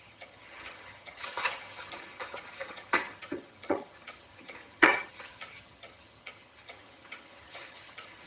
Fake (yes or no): yes